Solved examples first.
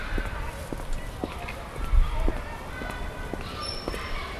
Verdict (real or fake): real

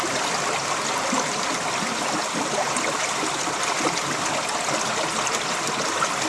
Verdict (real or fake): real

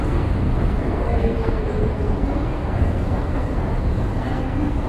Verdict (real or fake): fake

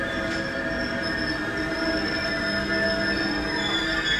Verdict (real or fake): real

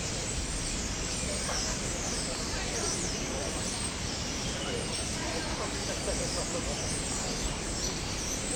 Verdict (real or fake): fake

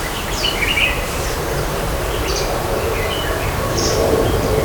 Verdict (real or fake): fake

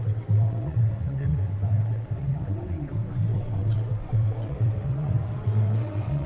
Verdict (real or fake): fake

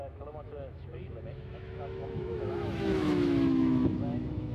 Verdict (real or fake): fake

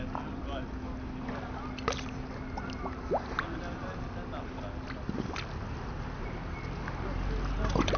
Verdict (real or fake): real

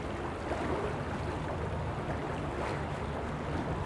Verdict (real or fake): real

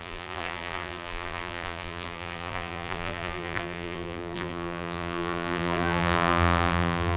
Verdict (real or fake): fake